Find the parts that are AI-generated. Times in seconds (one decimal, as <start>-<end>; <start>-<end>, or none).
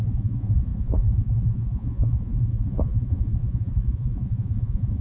0.0-5.0